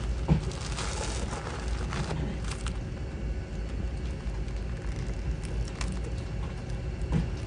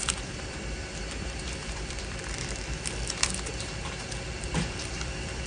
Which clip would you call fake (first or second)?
second